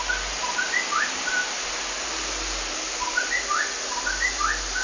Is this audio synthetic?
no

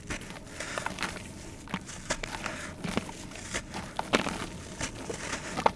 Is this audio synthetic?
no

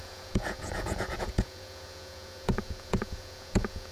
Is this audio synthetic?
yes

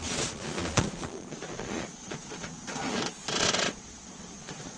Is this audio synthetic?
yes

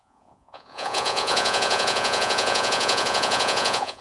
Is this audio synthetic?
yes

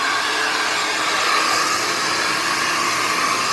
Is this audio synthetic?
no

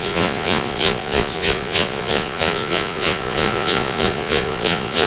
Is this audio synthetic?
yes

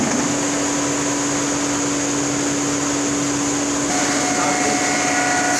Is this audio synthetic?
no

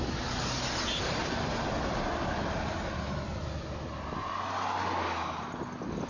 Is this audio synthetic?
no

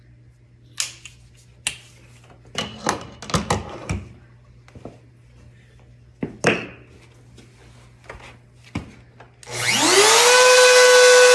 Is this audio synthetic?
no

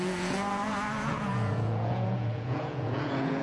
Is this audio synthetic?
yes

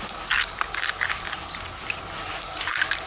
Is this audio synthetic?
no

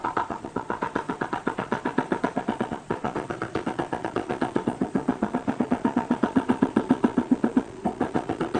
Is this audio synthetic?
yes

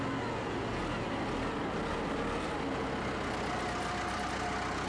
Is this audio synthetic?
no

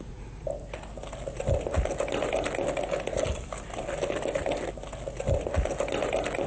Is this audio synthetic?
no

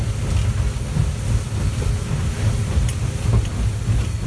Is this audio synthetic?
no